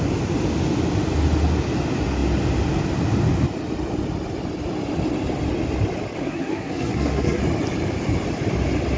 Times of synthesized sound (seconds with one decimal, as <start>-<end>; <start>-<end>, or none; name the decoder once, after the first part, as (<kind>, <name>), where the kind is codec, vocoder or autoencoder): 6.2-7.4 (codec, SNAC)